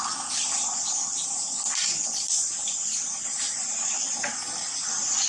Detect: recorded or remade recorded